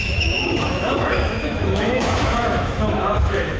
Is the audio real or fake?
fake